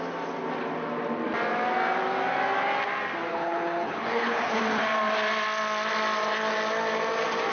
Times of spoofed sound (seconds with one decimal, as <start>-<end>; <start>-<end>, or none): 3.3-4.6